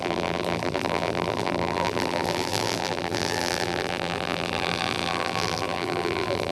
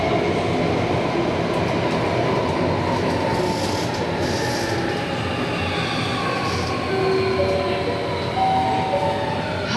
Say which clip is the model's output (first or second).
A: first